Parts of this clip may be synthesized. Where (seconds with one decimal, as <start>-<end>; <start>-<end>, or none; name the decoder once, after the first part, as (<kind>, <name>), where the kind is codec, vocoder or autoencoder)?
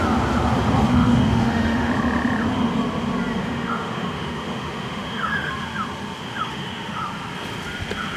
0.9-1.9 (autoencoder, DAC-VAE); 3.4-5.5; 6.2-7.0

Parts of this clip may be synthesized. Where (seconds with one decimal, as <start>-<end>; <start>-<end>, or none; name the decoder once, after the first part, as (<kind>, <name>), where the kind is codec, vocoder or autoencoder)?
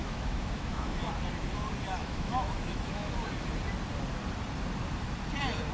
0.0-1.0 (autoencoder, DAC-VAE); 2.0-3.1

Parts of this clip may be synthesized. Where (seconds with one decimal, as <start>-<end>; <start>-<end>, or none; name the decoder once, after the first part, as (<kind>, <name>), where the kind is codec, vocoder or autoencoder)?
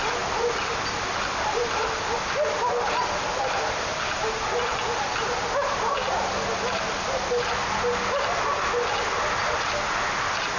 none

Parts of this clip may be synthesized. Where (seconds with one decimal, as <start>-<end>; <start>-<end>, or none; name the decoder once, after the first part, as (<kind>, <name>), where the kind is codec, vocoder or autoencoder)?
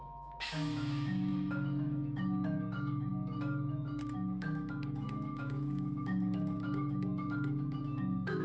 0.0-8.4 (autoencoder, DAC-VAE)